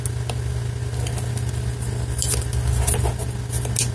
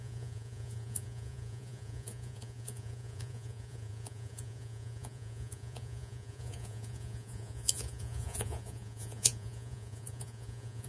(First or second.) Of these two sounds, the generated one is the second